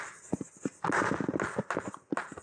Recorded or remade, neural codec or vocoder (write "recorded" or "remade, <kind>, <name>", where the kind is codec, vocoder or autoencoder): recorded